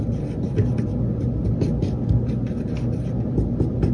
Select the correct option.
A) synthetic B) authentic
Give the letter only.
B